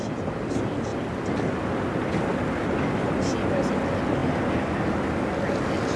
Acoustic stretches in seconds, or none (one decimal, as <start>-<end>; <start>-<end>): 0.0-6.0